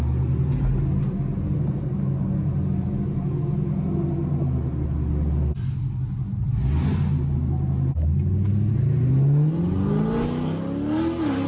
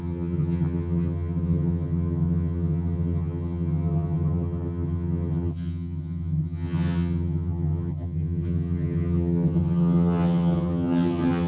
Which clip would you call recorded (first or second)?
first